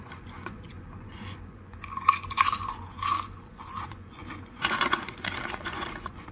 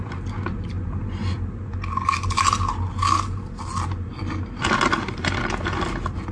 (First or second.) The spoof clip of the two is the first